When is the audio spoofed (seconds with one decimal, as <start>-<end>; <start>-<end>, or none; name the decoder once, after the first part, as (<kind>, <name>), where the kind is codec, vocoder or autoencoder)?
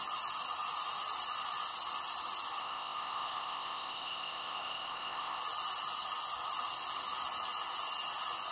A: 2.6-5.4 (codec, ZipCodec)